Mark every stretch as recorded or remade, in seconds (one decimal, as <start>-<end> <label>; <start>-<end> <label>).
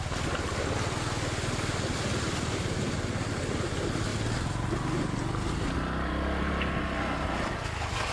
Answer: 0.0-8.1 recorded